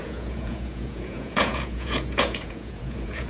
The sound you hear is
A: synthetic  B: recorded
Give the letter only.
A